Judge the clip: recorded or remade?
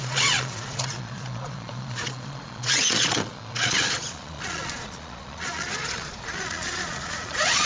remade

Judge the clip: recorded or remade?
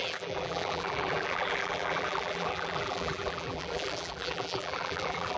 remade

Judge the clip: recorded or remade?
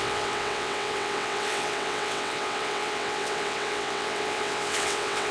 remade